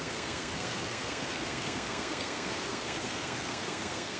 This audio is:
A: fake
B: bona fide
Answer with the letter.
A